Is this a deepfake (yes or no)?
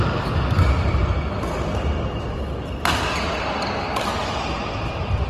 yes